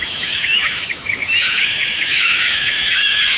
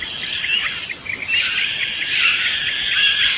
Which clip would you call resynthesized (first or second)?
first